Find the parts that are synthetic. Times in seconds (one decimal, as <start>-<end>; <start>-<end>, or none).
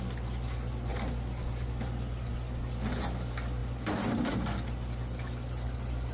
0.9-2.3; 3.6-4.3